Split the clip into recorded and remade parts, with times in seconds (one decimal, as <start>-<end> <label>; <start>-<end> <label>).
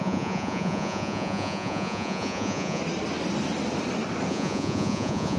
0.0-2.8 remade; 2.8-4.3 recorded; 4.3-5.4 remade